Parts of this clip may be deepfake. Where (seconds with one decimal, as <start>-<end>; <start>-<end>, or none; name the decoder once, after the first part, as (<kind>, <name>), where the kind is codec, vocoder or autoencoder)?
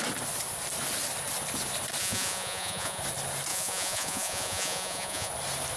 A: 2.0-3.0 (vocoder, Vocos); 3.5-5.3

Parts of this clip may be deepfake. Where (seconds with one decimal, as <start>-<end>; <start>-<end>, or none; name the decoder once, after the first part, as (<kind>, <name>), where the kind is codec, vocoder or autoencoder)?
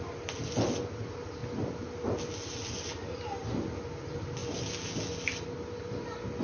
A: none